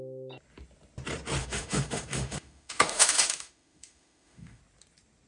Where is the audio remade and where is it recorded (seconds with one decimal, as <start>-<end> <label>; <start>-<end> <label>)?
0.0-1.4 recorded; 1.4-4.6 remade; 4.6-5.3 recorded